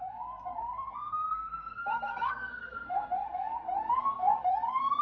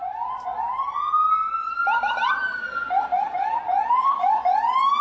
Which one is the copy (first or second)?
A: first